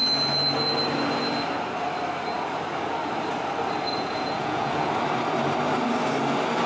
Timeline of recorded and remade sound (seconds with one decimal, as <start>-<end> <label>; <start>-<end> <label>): 0.0-3.9 recorded; 3.9-4.9 remade; 4.9-6.7 recorded